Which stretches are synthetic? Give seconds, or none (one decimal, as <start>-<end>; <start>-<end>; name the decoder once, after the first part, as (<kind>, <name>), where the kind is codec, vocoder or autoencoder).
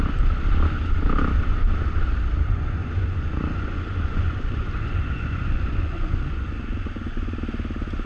2.5-7.4 (vocoder, Vocos)